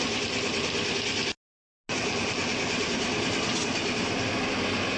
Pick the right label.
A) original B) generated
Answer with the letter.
A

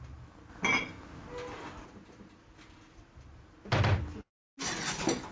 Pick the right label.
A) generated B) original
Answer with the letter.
B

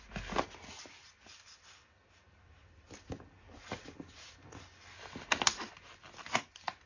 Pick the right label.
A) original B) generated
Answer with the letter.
A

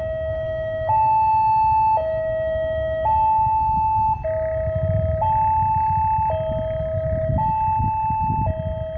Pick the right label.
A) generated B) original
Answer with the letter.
B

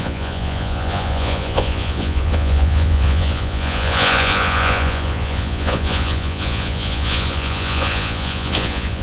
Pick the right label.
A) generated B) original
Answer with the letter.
A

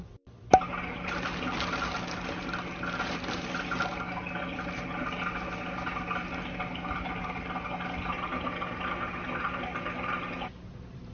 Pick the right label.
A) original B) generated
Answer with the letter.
A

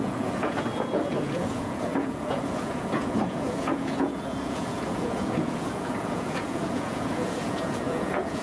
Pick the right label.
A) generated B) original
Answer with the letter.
A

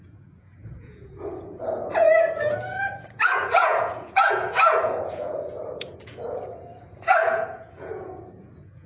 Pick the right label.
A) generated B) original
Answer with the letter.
A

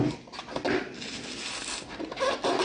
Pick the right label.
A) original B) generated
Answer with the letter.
A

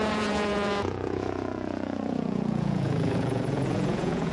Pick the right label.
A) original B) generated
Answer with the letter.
B